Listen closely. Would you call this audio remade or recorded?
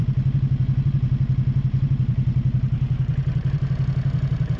recorded